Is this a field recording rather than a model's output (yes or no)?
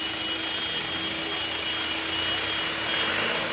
yes